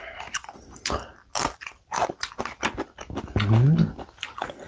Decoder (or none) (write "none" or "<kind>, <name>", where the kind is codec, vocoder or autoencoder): none